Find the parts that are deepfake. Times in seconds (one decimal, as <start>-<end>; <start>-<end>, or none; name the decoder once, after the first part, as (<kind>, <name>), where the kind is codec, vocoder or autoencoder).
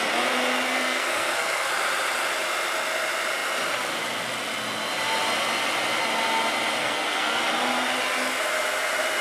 0.7-1.7 (codec, SNAC); 6.8-7.4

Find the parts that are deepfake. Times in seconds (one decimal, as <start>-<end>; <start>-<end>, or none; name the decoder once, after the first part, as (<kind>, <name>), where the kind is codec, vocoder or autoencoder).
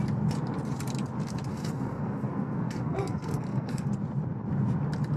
1.5-3.9 (codec, SNAC)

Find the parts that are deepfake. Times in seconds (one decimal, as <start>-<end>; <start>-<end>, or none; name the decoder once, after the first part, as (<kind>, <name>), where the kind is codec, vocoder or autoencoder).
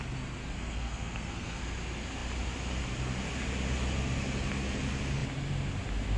0.4-1.6 (codec, SNAC)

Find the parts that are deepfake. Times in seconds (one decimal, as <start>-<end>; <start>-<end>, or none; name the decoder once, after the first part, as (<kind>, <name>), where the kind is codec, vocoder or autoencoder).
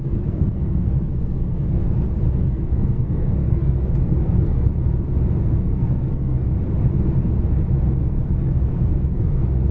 0.0-1.8 (codec, SNAC); 2.4-4.7; 5.4-6.4; 8.0-9.7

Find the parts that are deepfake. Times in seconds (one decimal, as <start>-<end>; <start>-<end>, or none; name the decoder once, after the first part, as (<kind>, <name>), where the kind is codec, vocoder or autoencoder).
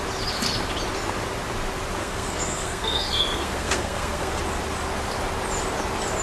2.0-4.4 (codec, SNAC)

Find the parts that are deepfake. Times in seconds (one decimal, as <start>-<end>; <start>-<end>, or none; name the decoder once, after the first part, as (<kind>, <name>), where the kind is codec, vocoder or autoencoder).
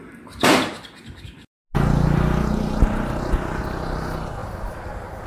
none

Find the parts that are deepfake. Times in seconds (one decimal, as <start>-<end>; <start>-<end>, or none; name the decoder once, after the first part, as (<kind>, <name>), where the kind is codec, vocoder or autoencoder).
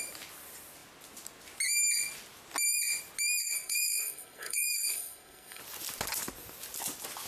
3.4-5.6 (codec, SNAC)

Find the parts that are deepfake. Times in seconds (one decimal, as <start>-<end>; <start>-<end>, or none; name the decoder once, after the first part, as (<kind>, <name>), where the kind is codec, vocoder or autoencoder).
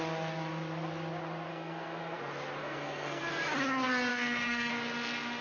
1.5-2.2 (codec, SNAC); 2.6-3.2; 4.1-4.7